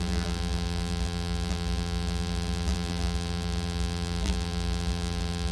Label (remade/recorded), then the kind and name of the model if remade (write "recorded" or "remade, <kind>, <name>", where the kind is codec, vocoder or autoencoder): remade, vocoder, BigVGAN v2